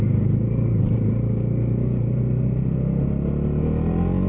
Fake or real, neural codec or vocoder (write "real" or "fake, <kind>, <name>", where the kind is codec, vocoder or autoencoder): real